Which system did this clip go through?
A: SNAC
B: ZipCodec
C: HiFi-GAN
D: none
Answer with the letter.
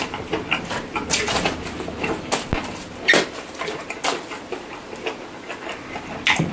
D